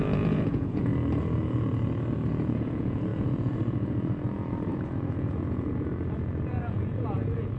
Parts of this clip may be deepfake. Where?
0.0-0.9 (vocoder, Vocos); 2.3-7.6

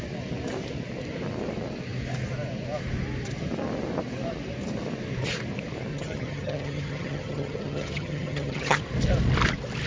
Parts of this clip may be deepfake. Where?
5.9-8.8 (vocoder, HiFi-GAN)

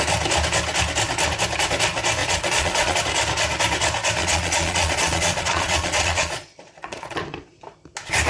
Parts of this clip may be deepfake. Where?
2.2-3.0 (vocoder, Vocos); 4.2-7.2